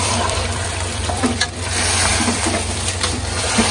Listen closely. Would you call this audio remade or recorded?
remade